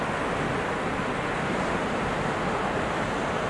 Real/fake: real